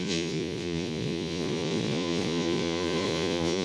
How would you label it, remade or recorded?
remade